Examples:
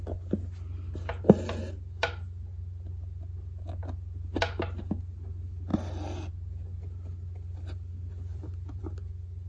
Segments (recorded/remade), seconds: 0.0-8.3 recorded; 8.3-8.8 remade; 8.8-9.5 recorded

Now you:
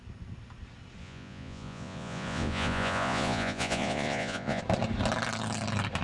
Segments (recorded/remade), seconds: 0.0-1.0 recorded; 1.0-4.6 remade; 4.6-6.0 recorded

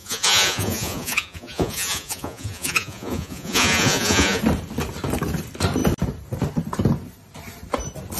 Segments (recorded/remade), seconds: 0.0-4.4 remade; 4.4-8.2 recorded

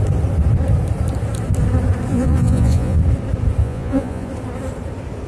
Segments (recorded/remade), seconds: 0.0-2.1 recorded; 2.1-3.0 remade; 3.0-3.6 recorded; 3.6-4.3 remade; 4.3-5.3 recorded

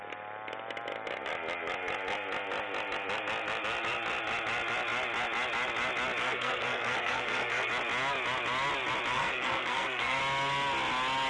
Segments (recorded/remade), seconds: 0.0-6.2 recorded; 6.2-7.7 remade; 7.7-9.1 recorded; 9.1-10.2 remade; 10.2-11.3 recorded

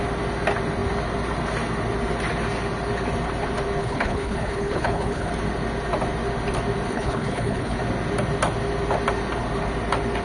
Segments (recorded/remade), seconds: 0.0-3.8 recorded; 3.8-5.3 remade; 5.3-6.9 recorded; 6.9-7.8 remade; 7.8-10.2 recorded

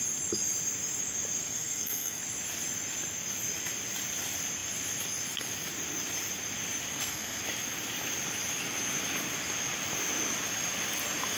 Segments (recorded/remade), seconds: 0.0-1.4 recorded; 1.4-2.2 remade; 2.2-6.9 recorded; 6.9-7.4 remade; 7.4-11.4 recorded

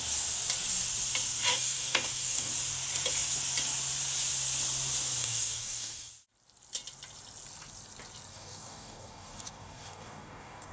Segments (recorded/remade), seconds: 0.0-1.5 recorded; 1.5-2.5 remade; 2.5-5.2 recorded; 5.2-6.1 remade; 6.1-8.3 recorded; 8.3-10.7 remade